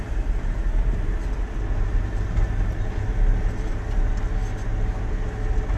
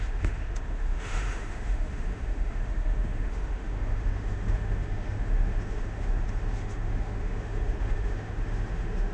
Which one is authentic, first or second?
first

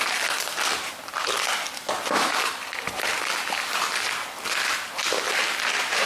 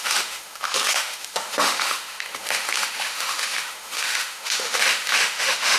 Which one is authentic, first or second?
first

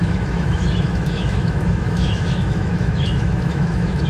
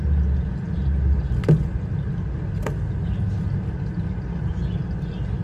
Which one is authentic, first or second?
second